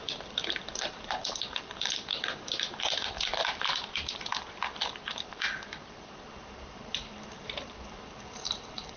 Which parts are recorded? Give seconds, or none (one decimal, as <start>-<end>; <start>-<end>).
4.3-5.0